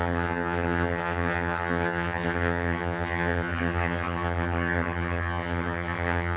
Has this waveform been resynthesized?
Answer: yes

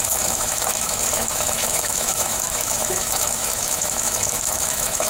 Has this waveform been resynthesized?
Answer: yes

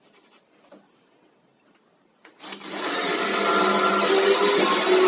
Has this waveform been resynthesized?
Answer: no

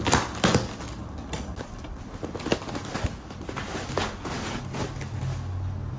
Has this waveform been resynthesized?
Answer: no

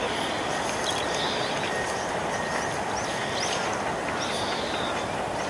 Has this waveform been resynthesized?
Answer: no